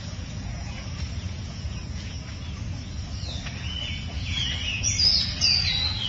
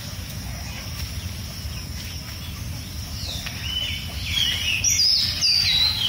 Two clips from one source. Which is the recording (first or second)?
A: second